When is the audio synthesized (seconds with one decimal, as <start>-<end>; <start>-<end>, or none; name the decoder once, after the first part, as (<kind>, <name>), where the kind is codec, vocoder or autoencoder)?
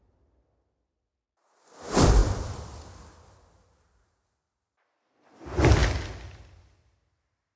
none